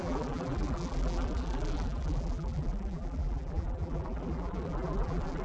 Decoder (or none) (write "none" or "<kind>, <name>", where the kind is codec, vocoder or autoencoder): vocoder, BigVGAN v2